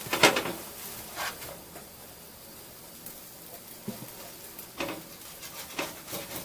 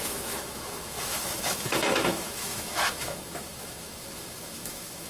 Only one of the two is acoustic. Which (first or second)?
first